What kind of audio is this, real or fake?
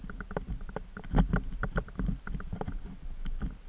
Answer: real